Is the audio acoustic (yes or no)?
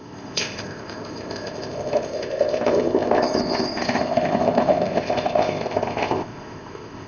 no